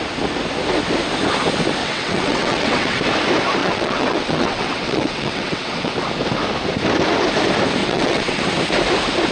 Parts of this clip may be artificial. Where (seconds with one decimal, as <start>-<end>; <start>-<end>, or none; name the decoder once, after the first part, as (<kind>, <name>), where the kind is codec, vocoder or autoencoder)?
1.8-3.0 (vocoder, WaveNeXt); 3.6-5.9; 7.8-8.4